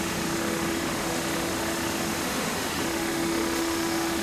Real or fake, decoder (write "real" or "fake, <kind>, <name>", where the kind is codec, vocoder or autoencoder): fake, autoencoder, DAC-VAE